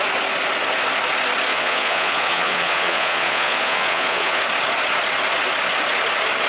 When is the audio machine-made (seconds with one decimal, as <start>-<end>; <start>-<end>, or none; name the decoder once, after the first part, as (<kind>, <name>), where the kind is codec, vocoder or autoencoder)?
1.5-4.4 (vocoder, Vocos)